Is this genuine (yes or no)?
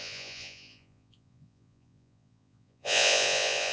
no